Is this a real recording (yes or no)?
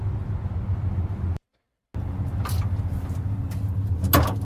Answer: yes